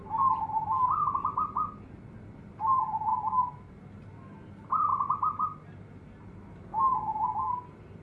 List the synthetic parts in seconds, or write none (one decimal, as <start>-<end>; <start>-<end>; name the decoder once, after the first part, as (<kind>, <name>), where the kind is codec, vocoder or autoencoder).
3.1-3.7 (autoencoder, DAC-VAE); 6.7-7.5